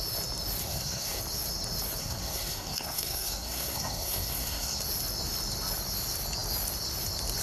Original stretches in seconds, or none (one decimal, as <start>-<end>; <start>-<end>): 0.0-0.6; 1.2-2.0; 4.8-7.4